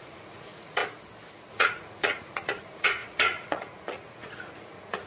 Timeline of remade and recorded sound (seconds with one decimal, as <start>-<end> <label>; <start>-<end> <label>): 0.0-0.8 remade; 0.8-1.5 recorded; 1.5-5.1 remade